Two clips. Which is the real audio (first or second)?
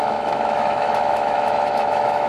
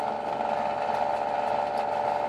second